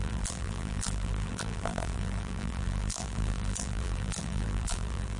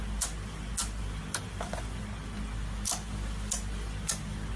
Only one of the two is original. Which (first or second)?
second